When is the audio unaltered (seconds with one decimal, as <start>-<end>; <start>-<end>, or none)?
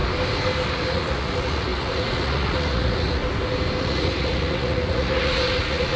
0.0-0.7; 3.2-3.8